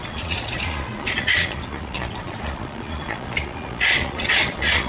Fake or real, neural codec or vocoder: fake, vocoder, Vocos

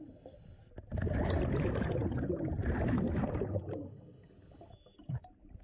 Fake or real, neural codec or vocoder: real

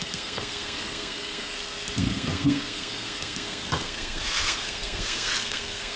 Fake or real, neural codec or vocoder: fake, codec, SNAC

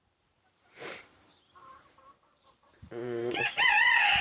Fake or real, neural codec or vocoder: fake, vocoder, BigVGAN v2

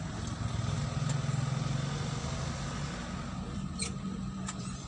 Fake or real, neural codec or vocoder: real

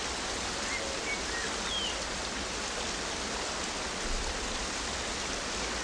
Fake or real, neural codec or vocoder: real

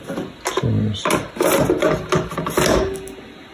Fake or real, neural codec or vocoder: real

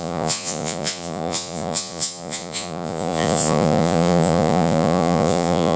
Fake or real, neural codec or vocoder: fake, vocoder, Vocos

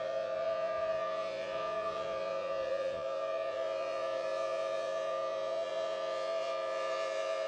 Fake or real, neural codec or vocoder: fake, vocoder, Vocos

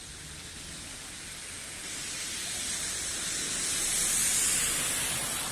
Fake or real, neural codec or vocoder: real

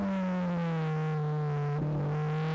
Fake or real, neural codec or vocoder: real